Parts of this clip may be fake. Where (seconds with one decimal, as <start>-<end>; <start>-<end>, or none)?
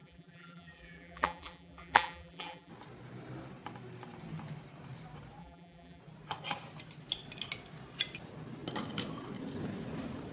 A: 0.0-2.7; 5.4-6.0